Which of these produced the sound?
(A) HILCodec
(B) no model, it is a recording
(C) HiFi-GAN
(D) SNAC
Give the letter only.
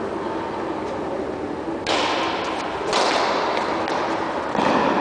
B